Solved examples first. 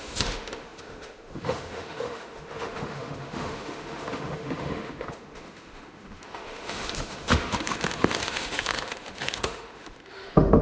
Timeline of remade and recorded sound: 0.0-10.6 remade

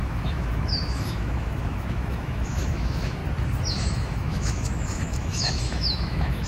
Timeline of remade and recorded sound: 0.0-3.2 remade; 3.2-3.7 recorded; 3.7-6.5 remade

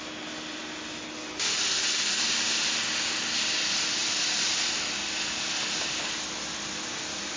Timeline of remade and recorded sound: 0.0-7.4 recorded